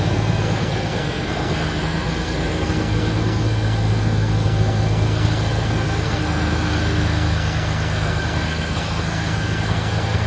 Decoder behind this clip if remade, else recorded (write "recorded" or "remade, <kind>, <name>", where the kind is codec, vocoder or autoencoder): remade, codec, SNAC